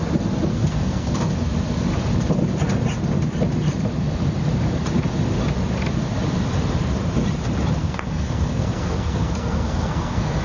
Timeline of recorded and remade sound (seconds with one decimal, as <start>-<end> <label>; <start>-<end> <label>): 0.0-0.5 recorded; 0.5-1.2 remade; 1.2-7.8 recorded; 7.8-10.4 remade